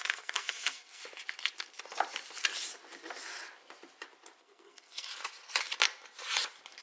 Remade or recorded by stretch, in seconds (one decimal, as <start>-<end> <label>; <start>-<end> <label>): 0.0-1.0 remade; 1.0-4.4 recorded; 4.4-5.1 remade; 5.1-6.8 recorded